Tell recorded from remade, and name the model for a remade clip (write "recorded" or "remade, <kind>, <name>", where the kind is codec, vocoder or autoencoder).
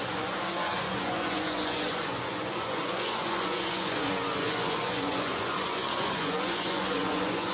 remade, vocoder, Vocos